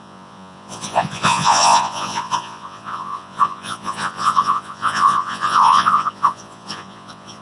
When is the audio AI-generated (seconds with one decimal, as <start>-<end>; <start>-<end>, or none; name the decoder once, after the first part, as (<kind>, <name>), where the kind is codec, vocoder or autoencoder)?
0.0-7.4 (vocoder, Vocos)